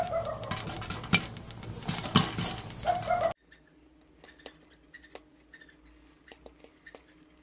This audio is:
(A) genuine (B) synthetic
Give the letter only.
A